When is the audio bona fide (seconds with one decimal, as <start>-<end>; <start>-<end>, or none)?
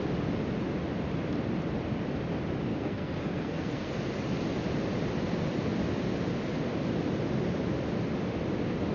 0.0-2.7; 3.9-8.9